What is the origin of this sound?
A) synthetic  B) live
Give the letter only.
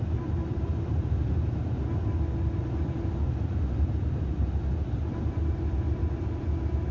B